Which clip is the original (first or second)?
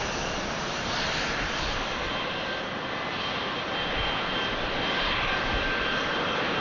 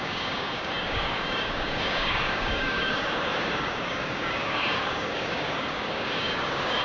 first